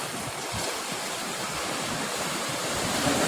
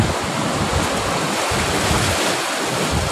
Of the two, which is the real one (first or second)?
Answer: second